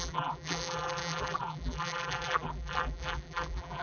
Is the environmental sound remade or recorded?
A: remade